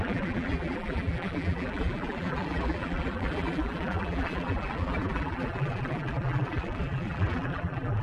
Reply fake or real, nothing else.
fake